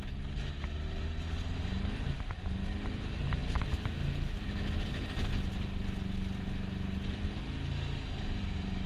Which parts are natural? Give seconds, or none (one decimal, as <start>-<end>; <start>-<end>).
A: 0.0-8.9